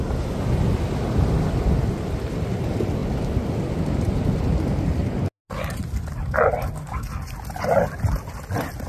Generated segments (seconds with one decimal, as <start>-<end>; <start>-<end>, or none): none